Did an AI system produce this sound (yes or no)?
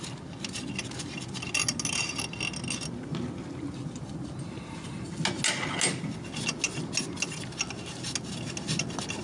no